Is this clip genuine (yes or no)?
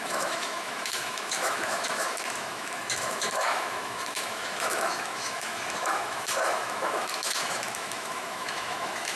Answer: no